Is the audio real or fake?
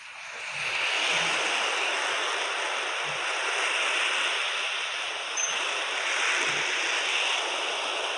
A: real